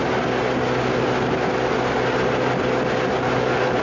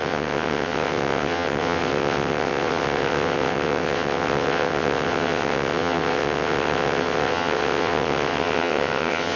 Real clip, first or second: first